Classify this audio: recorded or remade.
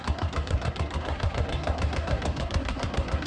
remade